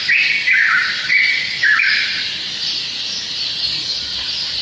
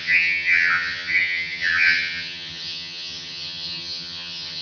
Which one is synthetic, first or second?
second